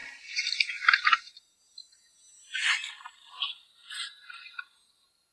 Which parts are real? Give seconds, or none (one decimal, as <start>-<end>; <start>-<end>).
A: 1.3-3.8; 4.5-5.3

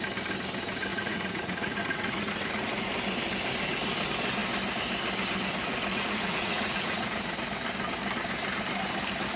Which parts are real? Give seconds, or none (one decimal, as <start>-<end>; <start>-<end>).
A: 0.0-0.9; 2.9-5.7; 7.2-9.4

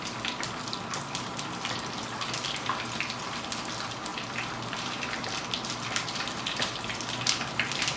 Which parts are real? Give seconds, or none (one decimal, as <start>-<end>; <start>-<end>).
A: 0.0-4.1; 6.9-8.0

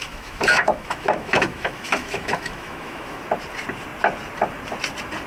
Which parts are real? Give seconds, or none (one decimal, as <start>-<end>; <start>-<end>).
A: 3.2-5.3

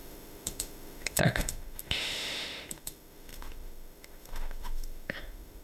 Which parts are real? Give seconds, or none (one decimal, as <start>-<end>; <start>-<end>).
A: none

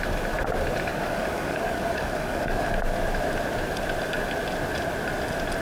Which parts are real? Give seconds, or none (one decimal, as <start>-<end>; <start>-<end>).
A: 0.0-0.9; 2.8-5.6